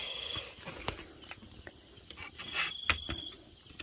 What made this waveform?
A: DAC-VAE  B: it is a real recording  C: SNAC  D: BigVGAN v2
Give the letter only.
B